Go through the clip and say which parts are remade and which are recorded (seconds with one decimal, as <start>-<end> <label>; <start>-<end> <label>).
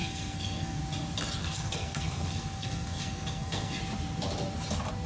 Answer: 0.0-0.8 remade; 0.8-1.4 recorded; 1.4-3.8 remade; 3.8-5.1 recorded